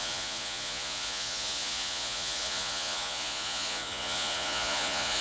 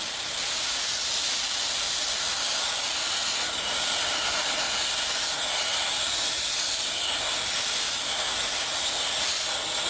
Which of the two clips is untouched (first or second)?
second